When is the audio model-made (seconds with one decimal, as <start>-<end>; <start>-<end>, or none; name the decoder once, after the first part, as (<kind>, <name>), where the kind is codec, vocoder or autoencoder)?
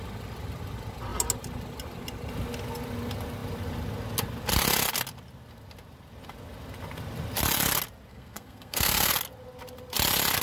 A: 8.1-9.1 (codec, SNAC)